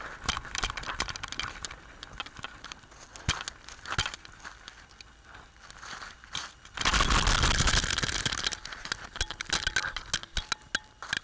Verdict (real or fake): real